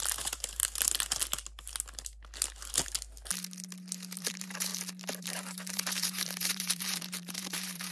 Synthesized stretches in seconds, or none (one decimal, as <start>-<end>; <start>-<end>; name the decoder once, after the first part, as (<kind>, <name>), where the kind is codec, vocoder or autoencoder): 0.0-0.6 (vocoder, BigVGAN v2); 4.2-4.7; 5.2-7.9